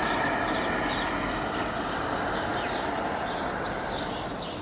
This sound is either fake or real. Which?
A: real